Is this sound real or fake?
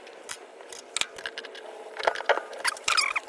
real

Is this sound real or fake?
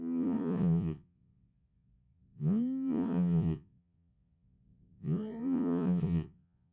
fake